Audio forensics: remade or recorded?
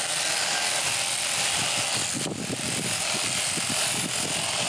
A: recorded